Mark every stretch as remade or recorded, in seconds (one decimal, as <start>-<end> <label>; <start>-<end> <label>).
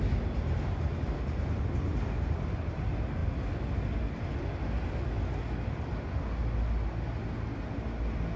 0.0-8.4 recorded